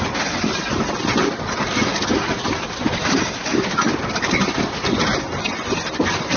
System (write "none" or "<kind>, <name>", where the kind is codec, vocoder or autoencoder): none